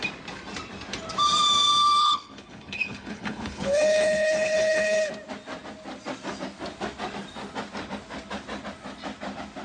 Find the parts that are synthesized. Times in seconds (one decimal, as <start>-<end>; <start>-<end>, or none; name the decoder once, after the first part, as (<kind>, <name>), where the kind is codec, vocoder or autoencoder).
2.0-5.1 (codec, HILCodec)